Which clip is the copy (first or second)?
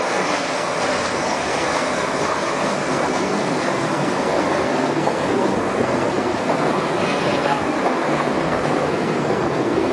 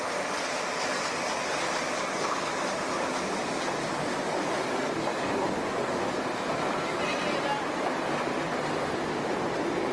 first